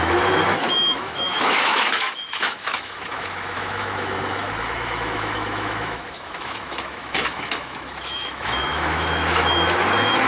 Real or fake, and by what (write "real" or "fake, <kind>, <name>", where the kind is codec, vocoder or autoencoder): fake, autoencoder, DAC-VAE